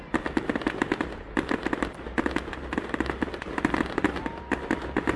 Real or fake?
real